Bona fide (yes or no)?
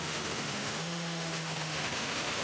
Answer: no